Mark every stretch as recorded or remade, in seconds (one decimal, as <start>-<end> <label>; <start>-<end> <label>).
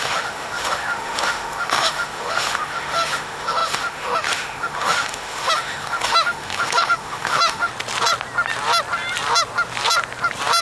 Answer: 0.0-7.7 remade; 7.7-10.6 recorded